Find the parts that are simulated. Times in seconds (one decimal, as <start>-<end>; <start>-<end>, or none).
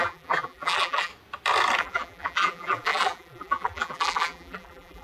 0.0-1.1; 1.8-5.0